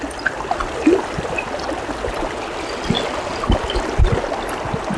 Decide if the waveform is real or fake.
real